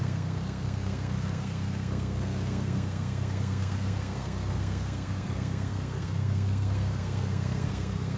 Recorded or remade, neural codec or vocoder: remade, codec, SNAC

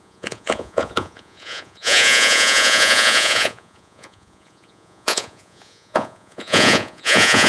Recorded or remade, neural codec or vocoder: remade, vocoder, Vocos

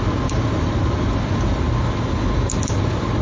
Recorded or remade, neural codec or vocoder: recorded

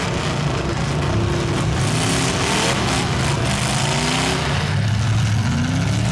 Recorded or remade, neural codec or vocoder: recorded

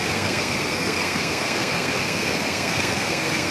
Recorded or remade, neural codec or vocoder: remade, codec, SNAC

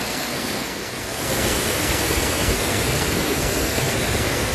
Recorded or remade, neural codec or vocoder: remade, codec, SNAC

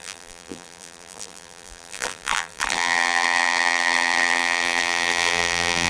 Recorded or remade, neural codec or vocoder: remade, vocoder, BigVGAN v2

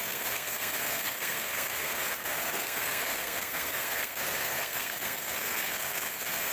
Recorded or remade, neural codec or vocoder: remade, codec, SNAC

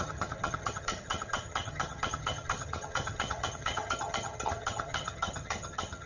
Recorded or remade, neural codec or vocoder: remade, vocoder, HiFi-GAN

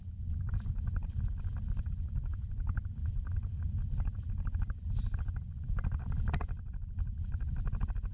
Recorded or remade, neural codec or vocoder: recorded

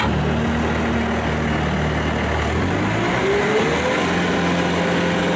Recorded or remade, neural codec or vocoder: recorded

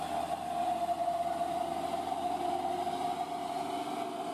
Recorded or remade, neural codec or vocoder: recorded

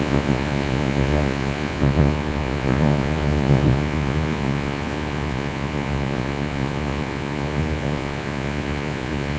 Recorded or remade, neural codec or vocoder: remade, vocoder, Vocos